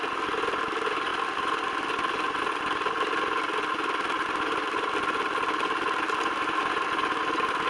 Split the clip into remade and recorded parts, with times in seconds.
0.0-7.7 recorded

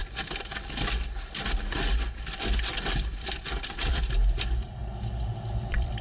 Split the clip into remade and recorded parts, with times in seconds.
0.0-2.2 recorded; 2.2-2.7 remade; 2.7-3.6 recorded; 3.6-4.8 remade; 4.8-5.6 recorded; 5.6-6.0 remade

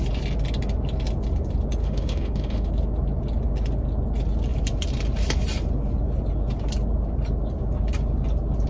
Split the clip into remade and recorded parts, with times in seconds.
0.0-1.8 recorded; 1.8-2.7 remade; 2.7-8.7 recorded

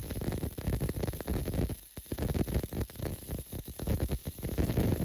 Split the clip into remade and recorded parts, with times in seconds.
0.0-3.0 recorded; 3.0-5.0 remade

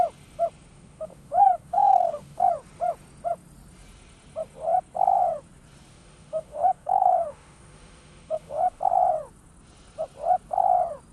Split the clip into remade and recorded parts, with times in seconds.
0.0-0.7 recorded; 0.7-2.5 remade; 2.5-5.9 recorded; 5.9-8.8 remade; 8.8-11.1 recorded

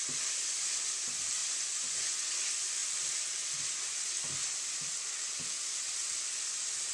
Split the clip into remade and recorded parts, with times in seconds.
0.0-1.4 recorded; 1.4-2.3 remade; 2.3-6.9 recorded